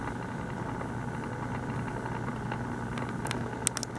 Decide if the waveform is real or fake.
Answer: real